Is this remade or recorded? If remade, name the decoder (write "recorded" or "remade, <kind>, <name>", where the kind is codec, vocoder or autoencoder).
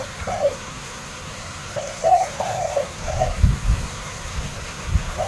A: remade, codec, SNAC